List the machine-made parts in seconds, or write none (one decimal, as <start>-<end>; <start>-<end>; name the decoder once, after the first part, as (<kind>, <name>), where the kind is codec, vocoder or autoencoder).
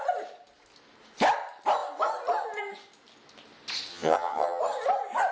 3.9-4.6 (vocoder, HiFi-GAN)